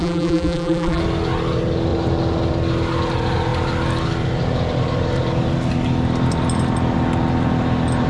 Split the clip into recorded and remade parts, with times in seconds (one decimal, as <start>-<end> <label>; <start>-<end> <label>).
0.0-1.0 remade; 1.0-8.1 recorded